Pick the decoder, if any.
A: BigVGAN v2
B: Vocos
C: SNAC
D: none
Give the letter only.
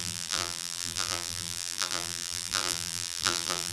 A